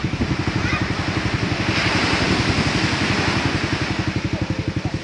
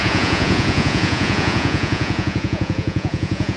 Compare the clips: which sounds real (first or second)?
first